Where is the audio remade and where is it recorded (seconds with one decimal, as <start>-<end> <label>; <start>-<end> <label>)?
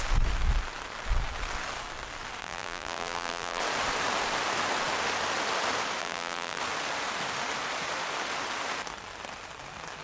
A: 0.0-2.4 recorded; 2.4-3.6 remade; 3.6-6.0 recorded; 6.0-6.6 remade; 6.6-10.0 recorded